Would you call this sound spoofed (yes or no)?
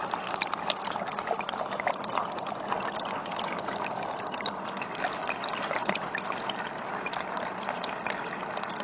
no